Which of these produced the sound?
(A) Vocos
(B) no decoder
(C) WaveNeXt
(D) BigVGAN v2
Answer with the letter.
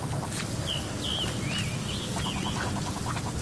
B